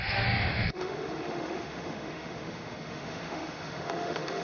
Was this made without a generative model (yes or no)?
no